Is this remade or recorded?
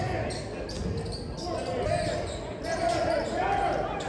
recorded